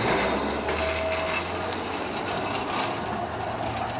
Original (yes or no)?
yes